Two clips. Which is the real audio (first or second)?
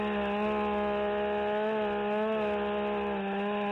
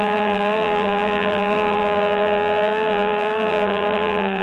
first